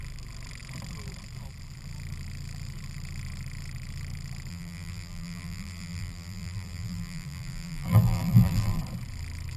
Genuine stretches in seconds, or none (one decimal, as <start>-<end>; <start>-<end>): 0.0-4.5; 8.8-9.6